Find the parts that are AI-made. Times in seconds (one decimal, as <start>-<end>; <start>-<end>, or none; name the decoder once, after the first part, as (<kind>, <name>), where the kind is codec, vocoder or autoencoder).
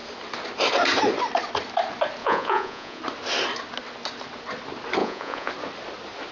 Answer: 2.2-3.0 (vocoder, Vocos); 5.0-5.5